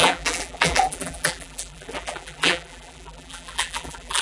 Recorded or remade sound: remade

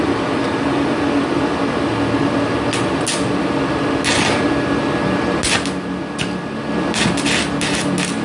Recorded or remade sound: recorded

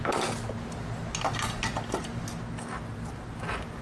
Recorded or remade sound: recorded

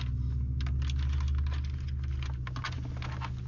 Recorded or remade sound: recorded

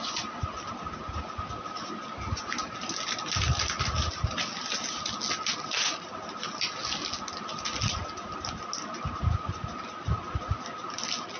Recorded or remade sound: recorded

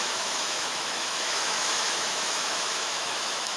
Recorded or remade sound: remade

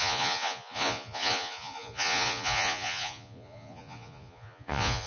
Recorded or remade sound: remade